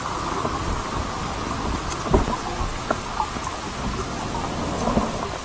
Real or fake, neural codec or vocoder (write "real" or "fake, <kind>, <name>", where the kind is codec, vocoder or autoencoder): real